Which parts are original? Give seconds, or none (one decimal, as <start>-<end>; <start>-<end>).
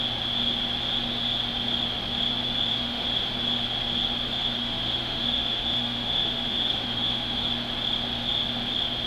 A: 0.0-2.7; 3.3-4.6; 7.4-9.1